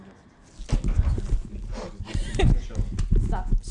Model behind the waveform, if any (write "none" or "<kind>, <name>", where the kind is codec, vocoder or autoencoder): none